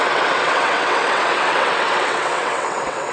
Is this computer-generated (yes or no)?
yes